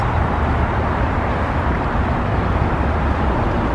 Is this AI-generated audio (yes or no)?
no